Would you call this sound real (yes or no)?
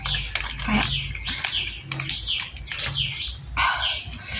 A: yes